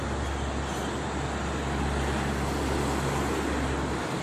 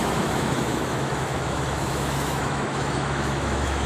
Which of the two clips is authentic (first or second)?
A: first